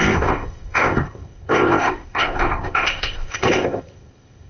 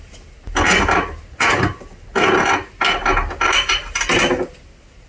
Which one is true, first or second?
second